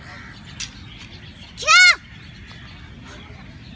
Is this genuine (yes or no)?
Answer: yes